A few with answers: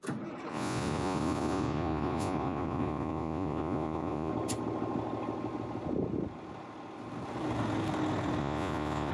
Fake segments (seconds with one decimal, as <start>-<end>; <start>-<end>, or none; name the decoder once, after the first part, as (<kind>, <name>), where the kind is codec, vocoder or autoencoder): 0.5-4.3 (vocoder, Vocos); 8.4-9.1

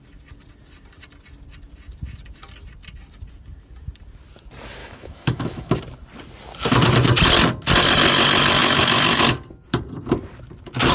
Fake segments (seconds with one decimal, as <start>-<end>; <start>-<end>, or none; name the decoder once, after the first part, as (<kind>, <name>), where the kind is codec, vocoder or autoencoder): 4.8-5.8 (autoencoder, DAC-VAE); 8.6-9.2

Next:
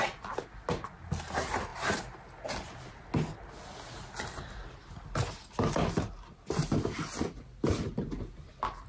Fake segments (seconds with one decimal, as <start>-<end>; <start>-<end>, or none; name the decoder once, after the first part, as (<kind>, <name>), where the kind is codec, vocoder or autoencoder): none

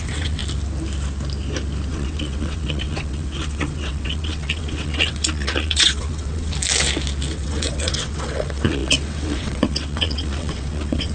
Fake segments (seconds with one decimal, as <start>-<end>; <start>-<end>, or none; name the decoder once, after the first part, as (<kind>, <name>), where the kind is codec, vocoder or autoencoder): 0.0-0.4 (vocoder, WaveNeXt); 1.9-6.5; 7.3-11.1

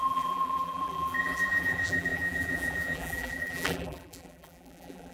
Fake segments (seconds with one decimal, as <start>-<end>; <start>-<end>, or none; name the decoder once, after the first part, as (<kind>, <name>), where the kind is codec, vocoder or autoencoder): 0.0-5.1 (vocoder, BigVGAN v2)

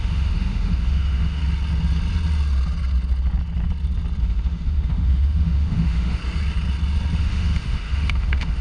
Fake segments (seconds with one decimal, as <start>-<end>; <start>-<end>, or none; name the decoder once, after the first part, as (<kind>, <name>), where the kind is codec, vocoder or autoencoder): 0.0-1.4 (autoencoder, DAC-VAE); 4.2-6.2; 7.2-8.6